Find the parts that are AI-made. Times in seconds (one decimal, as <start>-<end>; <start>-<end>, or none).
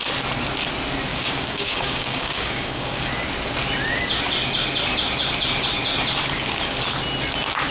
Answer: 1.1-3.1